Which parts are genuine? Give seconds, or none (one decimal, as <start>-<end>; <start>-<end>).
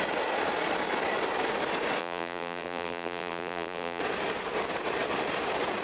0.0-2.0; 4.0-5.8